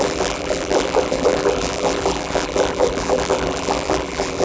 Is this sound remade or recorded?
remade